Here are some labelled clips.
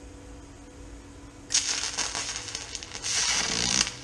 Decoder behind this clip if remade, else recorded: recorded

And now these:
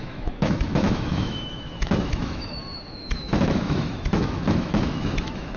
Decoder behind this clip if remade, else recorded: remade, autoencoder, DAC-VAE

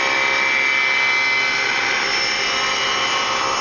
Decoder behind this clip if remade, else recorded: recorded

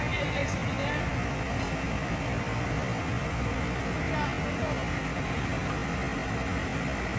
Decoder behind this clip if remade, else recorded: recorded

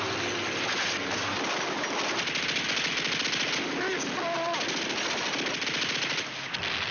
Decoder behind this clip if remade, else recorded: recorded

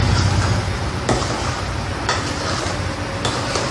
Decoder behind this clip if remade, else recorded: recorded